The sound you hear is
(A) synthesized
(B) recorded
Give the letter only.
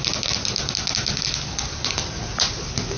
A